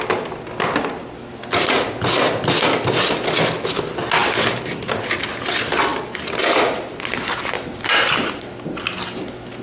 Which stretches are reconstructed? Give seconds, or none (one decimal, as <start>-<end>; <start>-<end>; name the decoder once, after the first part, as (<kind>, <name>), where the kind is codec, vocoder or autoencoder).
none